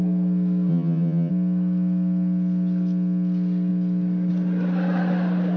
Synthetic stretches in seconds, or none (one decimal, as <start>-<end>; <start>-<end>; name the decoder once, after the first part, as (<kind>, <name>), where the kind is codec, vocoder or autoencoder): 0.7-1.3 (vocoder, HiFi-GAN)